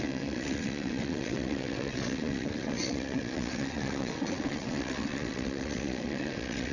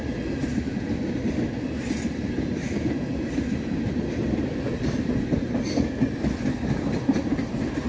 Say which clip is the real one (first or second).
second